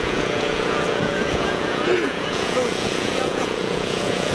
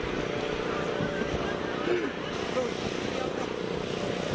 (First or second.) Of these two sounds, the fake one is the first